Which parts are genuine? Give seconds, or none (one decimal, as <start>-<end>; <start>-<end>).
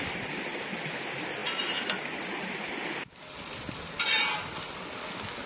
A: 0.0-5.5